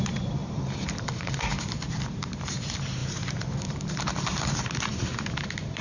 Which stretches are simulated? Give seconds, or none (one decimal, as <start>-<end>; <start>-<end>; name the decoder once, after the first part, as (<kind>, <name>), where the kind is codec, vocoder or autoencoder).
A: 0.0-5.8 (vocoder, BigVGAN v2)